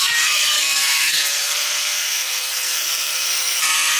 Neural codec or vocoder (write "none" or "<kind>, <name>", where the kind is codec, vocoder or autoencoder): codec, SNAC